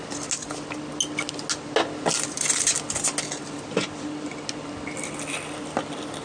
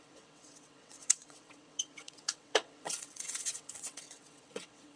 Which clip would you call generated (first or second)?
second